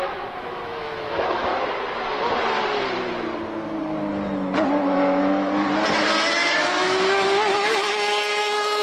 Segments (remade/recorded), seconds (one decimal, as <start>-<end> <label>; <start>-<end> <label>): 0.0-1.5 remade; 1.5-6.3 recorded; 6.3-8.8 remade